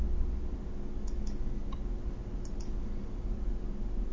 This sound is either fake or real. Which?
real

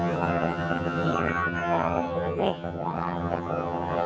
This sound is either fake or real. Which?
fake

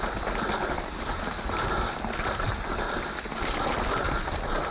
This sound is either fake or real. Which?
real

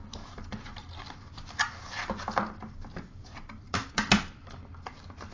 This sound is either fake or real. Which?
real